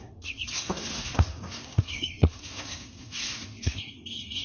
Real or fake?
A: fake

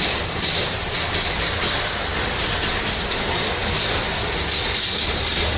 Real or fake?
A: real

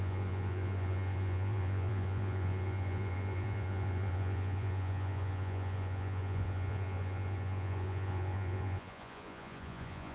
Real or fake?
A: fake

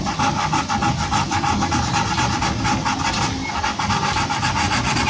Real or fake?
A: real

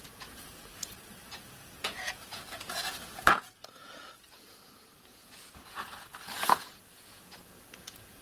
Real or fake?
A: fake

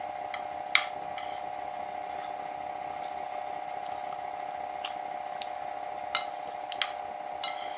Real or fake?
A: real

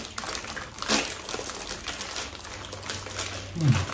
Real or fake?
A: real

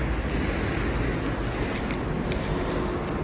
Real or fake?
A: real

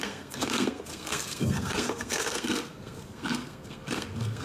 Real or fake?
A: fake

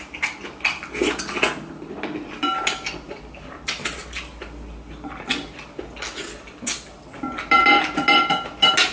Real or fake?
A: real